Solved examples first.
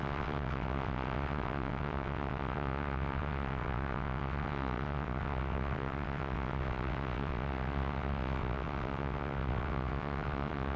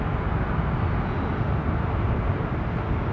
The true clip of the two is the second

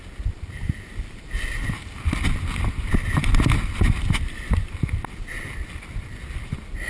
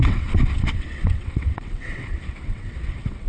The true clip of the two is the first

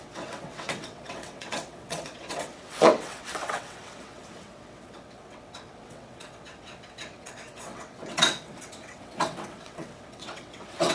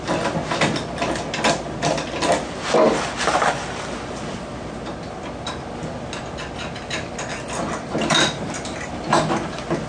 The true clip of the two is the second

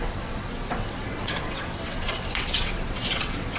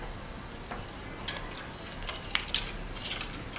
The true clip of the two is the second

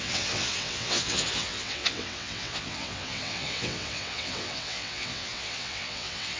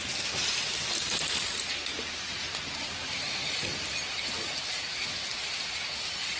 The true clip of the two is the second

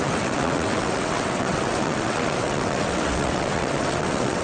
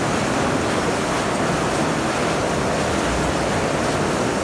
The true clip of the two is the second